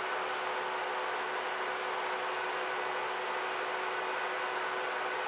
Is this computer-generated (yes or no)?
no